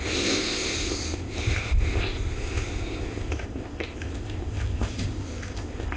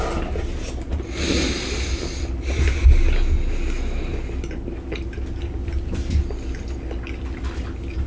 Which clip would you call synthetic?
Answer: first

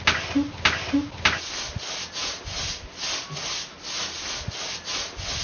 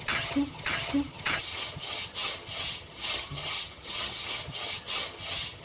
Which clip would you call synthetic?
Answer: second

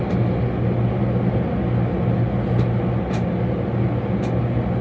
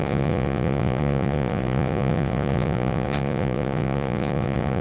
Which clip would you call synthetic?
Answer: second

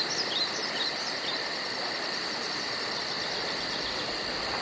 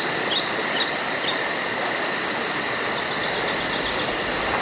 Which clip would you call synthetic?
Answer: first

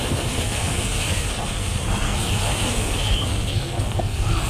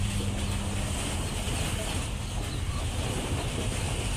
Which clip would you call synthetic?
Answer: first